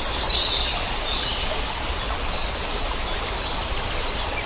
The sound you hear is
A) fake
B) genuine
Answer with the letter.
B